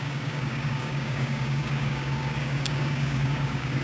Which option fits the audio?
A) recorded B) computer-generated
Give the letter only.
B